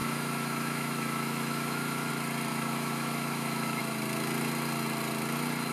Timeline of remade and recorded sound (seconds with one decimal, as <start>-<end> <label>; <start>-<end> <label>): 0.0-2.1 remade; 2.1-2.5 recorded; 2.5-3.8 remade; 3.8-5.7 recorded